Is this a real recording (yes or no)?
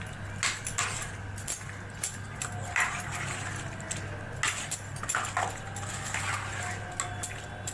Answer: yes